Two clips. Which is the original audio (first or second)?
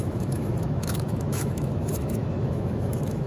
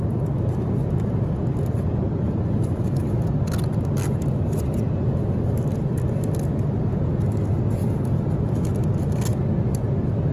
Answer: second